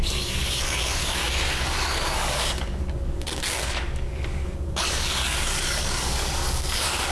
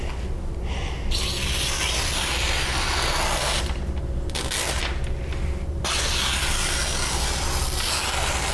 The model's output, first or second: first